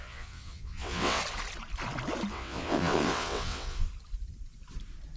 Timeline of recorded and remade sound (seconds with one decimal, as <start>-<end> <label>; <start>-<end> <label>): 0.0-1.2 remade; 1.2-2.3 recorded; 2.3-3.9 remade; 3.9-5.2 recorded

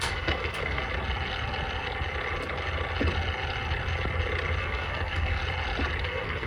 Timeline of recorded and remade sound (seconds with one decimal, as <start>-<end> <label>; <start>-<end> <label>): 0.0-0.8 remade; 0.8-4.6 recorded; 4.6-5.4 remade; 5.4-6.0 recorded; 6.0-6.5 remade

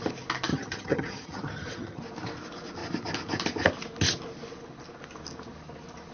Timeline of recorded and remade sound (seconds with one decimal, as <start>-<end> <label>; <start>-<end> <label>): 0.0-0.5 recorded; 0.5-2.0 remade; 2.0-6.1 recorded

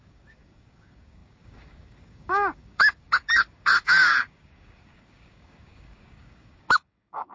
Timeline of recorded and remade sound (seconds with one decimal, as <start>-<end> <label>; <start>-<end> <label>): 0.0-7.3 remade